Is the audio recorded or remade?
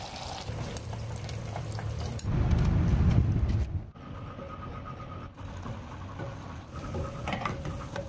recorded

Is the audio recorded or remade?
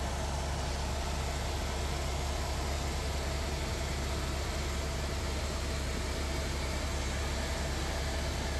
recorded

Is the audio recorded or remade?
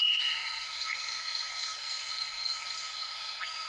remade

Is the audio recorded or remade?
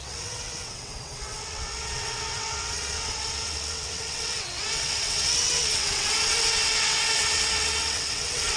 remade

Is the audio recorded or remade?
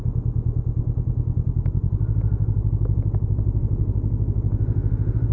recorded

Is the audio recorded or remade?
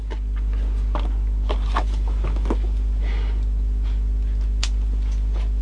recorded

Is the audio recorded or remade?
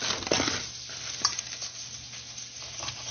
recorded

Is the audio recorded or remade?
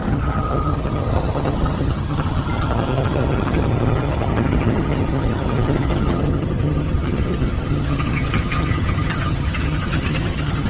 remade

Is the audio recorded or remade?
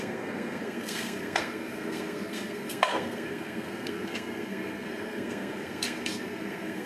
remade